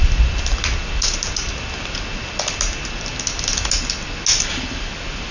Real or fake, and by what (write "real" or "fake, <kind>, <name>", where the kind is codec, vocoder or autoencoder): real